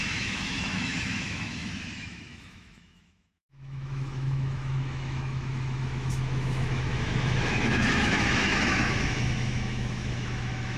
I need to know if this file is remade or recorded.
remade